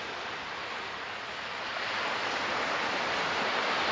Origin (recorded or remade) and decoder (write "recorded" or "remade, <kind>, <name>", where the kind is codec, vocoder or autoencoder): recorded